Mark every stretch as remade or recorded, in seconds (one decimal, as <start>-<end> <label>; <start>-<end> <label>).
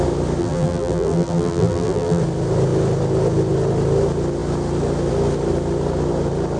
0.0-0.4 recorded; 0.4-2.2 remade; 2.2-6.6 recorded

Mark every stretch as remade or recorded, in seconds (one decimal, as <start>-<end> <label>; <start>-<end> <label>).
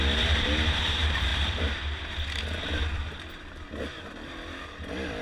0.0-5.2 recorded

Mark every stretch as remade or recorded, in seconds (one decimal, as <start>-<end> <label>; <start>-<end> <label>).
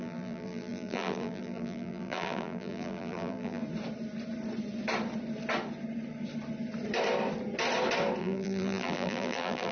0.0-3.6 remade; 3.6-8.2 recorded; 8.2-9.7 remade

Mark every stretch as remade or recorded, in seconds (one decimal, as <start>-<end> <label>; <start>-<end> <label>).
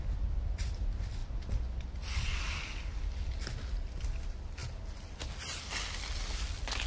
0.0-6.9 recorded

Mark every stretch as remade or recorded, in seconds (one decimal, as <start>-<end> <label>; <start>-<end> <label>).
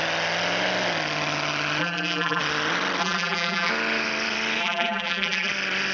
0.0-1.8 recorded; 1.8-2.4 remade; 2.4-3.0 recorded; 3.0-3.7 remade; 3.7-4.6 recorded; 4.6-5.5 remade; 5.5-5.9 recorded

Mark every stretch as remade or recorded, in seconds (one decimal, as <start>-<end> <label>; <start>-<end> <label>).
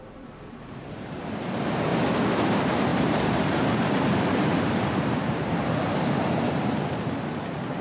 0.0-1.9 remade; 1.9-2.5 recorded; 2.5-7.8 remade